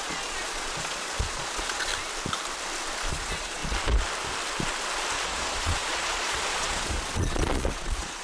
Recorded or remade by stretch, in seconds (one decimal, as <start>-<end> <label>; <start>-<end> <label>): 0.0-1.9 remade; 1.9-3.1 recorded; 3.1-3.6 remade; 3.6-5.2 recorded; 5.2-8.2 remade